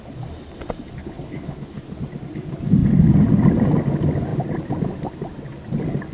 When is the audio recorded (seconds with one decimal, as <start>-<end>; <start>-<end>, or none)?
0.0-1.0; 1.8-6.1